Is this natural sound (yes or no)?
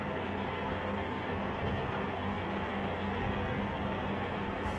no